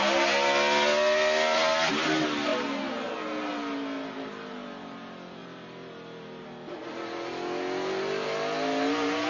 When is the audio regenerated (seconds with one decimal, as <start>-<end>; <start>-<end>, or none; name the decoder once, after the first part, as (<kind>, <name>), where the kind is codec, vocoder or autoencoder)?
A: none